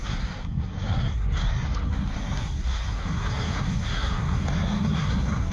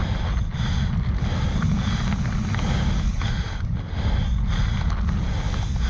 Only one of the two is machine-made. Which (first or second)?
first